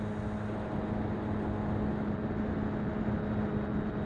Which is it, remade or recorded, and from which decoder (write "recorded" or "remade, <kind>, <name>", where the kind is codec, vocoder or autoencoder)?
recorded